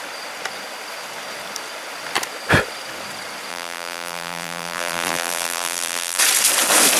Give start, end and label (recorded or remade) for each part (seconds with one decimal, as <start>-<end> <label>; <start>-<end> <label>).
0.0-3.5 recorded; 3.5-6.2 remade; 6.2-7.0 recorded

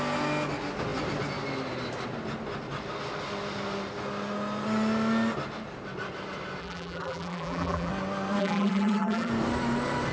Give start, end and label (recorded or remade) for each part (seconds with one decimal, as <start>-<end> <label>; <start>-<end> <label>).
0.0-6.6 recorded; 6.6-7.9 remade; 7.9-8.4 recorded; 8.4-9.3 remade; 9.3-10.1 recorded

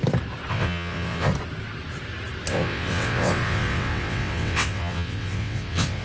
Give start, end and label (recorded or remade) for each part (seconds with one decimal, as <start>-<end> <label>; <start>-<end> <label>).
0.0-0.5 recorded; 0.5-1.3 remade; 1.3-2.5 recorded; 2.5-6.0 remade